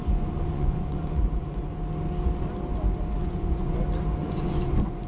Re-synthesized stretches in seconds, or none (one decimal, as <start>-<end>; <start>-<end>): 0.0-1.8; 3.2-3.8; 4.2-5.1